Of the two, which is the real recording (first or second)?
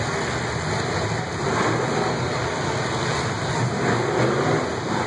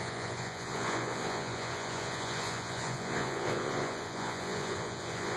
first